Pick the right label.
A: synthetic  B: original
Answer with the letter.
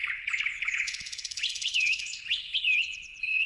A